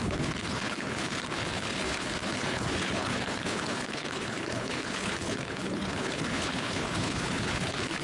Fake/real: fake